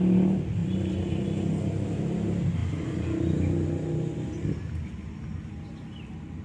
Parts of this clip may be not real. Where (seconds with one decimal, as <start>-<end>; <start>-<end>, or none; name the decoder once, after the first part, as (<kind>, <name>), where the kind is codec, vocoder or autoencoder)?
none